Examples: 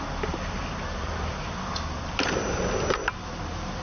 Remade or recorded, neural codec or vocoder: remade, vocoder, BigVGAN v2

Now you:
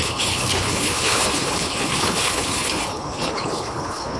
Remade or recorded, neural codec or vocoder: remade, codec, HILCodec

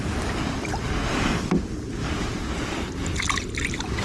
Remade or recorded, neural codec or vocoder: recorded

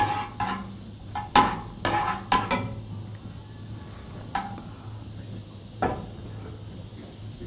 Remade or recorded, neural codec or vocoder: recorded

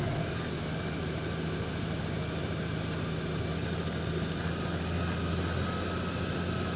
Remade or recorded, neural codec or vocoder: recorded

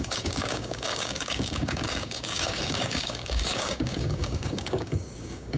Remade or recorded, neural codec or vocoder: remade, codec, DAC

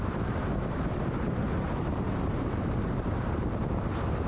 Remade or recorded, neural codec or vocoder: remade, vocoder, BigVGAN v2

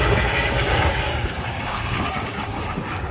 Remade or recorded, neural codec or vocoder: remade, codec, DAC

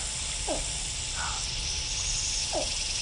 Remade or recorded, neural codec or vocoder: recorded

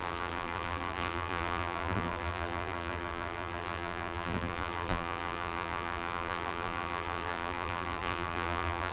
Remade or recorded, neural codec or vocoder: remade, vocoder, BigVGAN v2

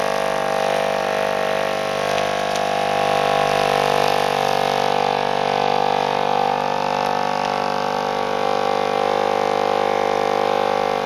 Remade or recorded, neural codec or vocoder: recorded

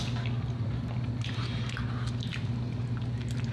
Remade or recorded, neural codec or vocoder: recorded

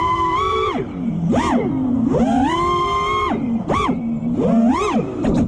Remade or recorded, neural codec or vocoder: recorded